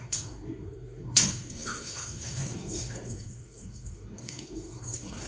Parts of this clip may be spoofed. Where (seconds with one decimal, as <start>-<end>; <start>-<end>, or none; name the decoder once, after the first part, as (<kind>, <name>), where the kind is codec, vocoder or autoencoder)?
0.0-5.3 (codec, SNAC)